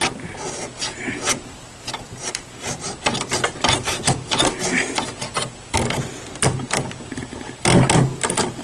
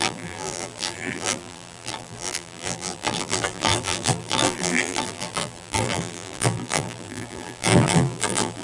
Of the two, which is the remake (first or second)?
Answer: second